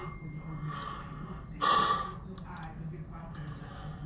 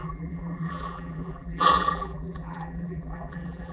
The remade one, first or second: second